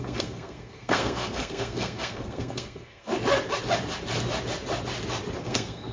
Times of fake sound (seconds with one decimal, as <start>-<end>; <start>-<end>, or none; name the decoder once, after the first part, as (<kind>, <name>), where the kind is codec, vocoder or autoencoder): 0.0-3.1 (codec, SNAC); 5.4-5.9